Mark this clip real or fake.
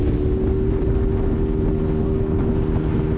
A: real